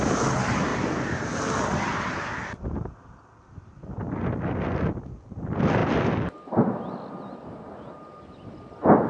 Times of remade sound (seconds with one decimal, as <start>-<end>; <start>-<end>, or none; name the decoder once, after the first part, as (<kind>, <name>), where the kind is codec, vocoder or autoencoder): none